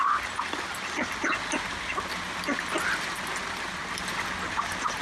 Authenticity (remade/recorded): recorded